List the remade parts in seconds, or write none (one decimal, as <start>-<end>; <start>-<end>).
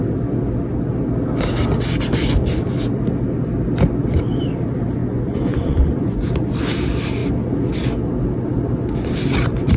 5.0-6.3